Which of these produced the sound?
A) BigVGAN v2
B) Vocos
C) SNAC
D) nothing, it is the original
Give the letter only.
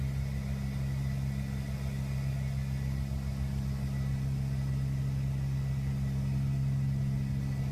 D